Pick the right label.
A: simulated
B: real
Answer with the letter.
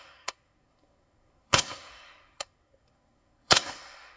A